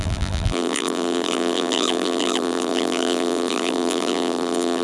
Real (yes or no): no